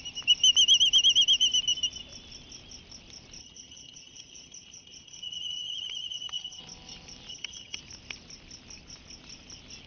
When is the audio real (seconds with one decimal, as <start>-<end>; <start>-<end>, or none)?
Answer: 0.0-3.4; 6.6-7.3; 7.8-9.9